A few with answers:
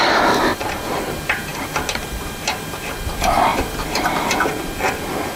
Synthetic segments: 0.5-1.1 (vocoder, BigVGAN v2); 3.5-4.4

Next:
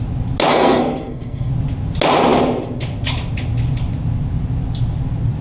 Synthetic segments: 0.5-1.5 (codec, SNAC)

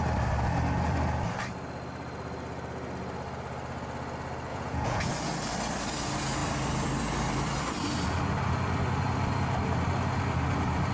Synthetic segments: 4.5-5.1 (vocoder, Vocos)

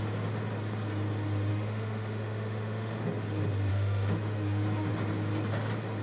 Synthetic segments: 1.5-3.0 (autoencoder, DAC-VAE); 3.7-4.9